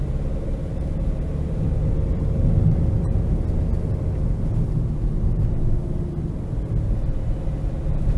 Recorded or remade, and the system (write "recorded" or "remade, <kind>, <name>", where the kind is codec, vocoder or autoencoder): recorded